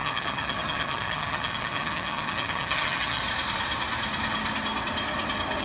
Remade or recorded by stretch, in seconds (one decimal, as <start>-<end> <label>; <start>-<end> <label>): 0.0-3.2 remade; 3.2-5.6 recorded